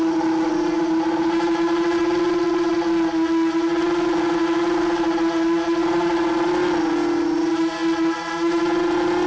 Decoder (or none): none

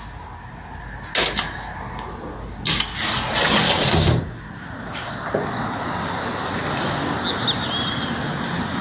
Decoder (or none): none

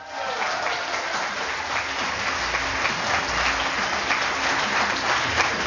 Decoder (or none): none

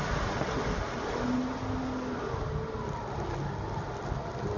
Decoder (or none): none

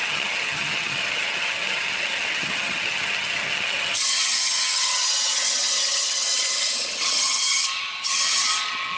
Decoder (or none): vocoder, HiFi-GAN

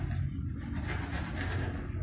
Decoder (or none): none